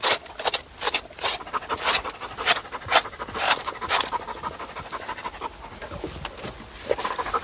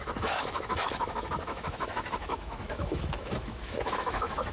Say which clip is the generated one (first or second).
second